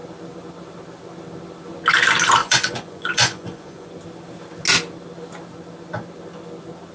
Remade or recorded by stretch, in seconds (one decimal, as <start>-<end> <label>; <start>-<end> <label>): 0.0-2.4 recorded; 2.4-3.9 remade; 3.9-6.9 recorded